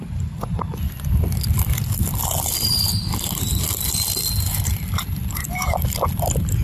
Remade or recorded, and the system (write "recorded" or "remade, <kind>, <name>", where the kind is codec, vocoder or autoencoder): remade, vocoder, BigVGAN v2